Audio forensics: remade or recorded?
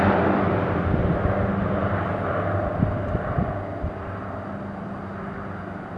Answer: recorded